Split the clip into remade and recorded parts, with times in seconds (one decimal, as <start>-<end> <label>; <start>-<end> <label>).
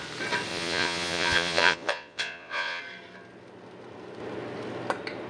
0.0-0.5 recorded; 0.5-2.8 remade; 2.8-5.3 recorded